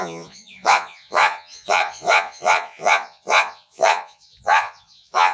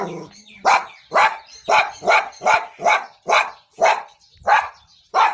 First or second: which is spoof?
first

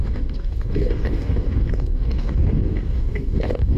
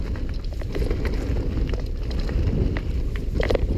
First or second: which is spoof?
first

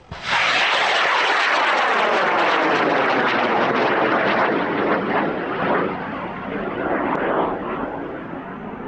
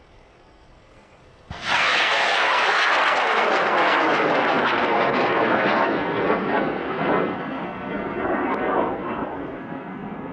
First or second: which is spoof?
second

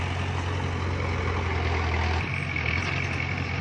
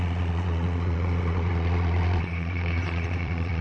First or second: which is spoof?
second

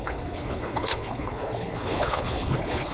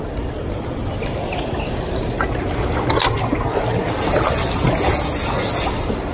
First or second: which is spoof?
first